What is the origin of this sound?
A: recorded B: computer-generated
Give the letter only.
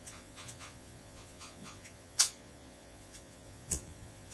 B